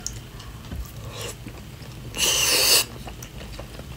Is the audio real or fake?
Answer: real